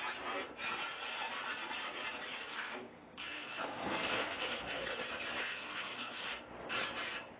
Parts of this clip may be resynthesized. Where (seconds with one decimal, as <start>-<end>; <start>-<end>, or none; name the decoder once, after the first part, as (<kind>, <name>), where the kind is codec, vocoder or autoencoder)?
2.5-4.9 (codec, SNAC); 5.4-6.4